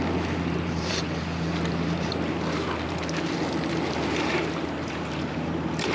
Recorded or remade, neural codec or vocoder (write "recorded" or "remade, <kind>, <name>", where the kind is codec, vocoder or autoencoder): remade, vocoder, BigVGAN v2